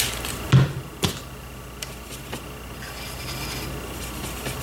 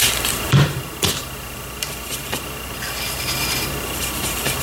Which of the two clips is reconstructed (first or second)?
second